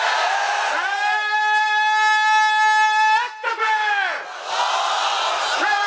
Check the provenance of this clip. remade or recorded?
recorded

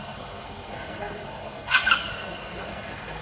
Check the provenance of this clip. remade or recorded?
remade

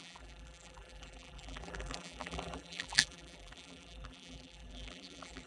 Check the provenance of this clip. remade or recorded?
remade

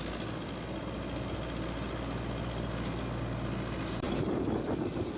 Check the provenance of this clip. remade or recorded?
recorded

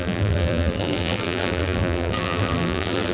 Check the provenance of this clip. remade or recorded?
remade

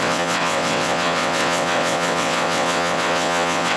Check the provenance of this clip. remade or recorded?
remade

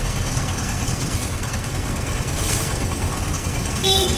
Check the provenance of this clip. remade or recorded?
remade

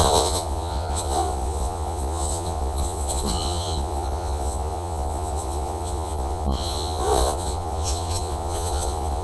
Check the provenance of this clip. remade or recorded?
remade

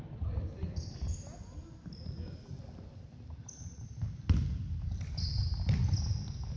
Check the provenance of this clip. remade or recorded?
recorded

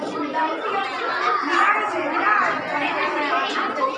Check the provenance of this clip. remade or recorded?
recorded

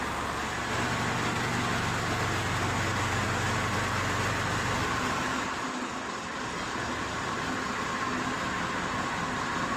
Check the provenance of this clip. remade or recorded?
recorded